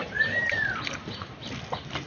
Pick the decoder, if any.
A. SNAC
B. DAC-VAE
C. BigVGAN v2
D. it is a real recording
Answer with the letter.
D